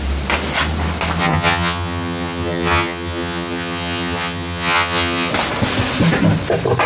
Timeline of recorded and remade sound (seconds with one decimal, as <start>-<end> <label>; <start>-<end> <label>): 0.0-1.2 recorded; 1.2-5.3 remade; 5.3-6.9 recorded